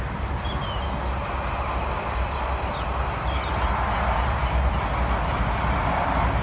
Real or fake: real